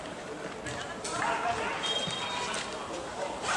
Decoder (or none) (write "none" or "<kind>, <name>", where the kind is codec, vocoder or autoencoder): none